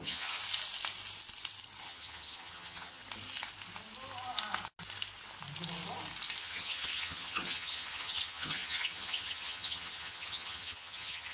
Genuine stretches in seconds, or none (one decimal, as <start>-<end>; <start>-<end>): 0.4-1.8; 3.0-6.4